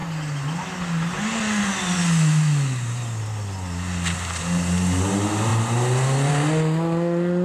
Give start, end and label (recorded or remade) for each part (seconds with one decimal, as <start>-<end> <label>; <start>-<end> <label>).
0.0-7.4 recorded